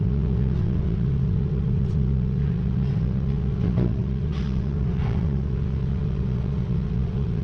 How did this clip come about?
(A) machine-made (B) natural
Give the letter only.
A